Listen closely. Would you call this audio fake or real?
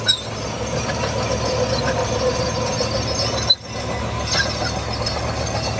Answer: real